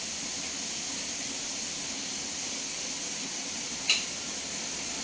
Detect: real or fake real